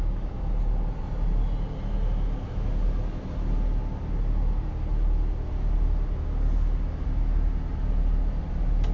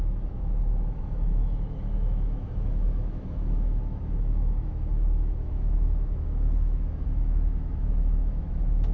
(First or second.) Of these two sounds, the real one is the first